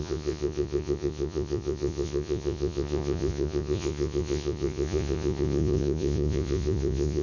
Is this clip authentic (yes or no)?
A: no